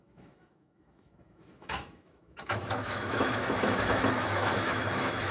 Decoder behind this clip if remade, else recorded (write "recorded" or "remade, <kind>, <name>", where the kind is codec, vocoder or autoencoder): remade, autoencoder, DAC-VAE